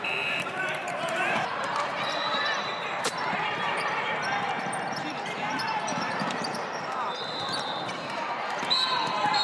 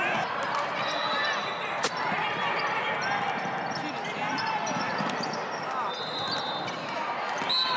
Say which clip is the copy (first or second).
first